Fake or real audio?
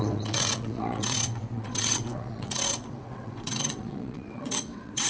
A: fake